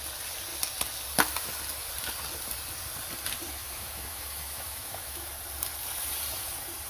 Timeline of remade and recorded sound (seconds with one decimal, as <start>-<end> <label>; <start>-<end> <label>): 0.0-3.6 recorded; 3.6-5.3 remade; 5.3-6.9 recorded

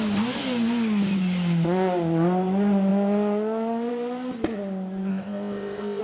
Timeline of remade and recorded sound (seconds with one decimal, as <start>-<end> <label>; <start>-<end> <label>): 0.0-5.1 recorded; 5.1-6.0 remade

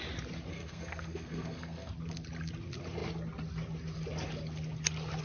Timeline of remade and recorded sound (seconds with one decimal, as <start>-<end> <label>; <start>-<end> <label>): 0.0-0.5 recorded; 0.5-1.9 remade; 1.9-5.2 recorded

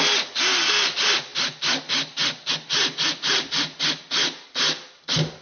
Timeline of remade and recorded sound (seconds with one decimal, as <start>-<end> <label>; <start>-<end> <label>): 0.0-5.4 recorded

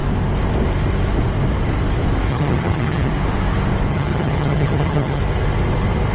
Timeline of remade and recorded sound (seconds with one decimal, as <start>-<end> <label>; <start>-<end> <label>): 0.0-2.3 recorded; 2.3-3.1 remade; 3.1-3.9 recorded; 3.9-5.2 remade; 5.2-6.1 recorded

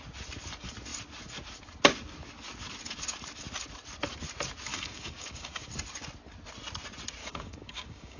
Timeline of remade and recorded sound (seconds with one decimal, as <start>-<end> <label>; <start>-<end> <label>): 0.0-4.7 recorded; 4.7-5.7 remade; 5.7-7.2 recorded; 7.2-8.2 remade

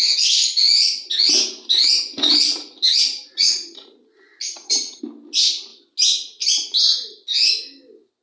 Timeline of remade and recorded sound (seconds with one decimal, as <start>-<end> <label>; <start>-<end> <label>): 0.0-4.5 recorded; 4.5-5.0 remade; 5.0-8.2 recorded

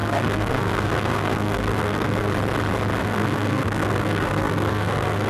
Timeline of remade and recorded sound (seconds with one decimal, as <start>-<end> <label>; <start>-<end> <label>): 0.0-2.3 remade; 2.3-3.0 recorded; 3.0-5.3 remade